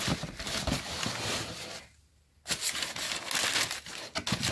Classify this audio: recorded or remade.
recorded